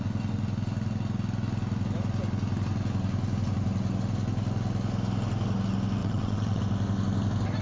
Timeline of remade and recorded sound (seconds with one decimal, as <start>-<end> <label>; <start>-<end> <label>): 0.0-6.0 recorded; 6.0-6.6 remade; 6.6-7.6 recorded